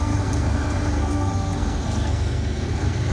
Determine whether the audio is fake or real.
fake